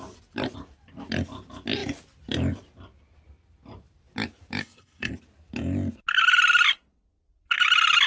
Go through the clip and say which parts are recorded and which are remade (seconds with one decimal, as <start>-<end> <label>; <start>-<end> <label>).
0.0-4.6 recorded; 4.6-5.1 remade; 5.1-8.1 recorded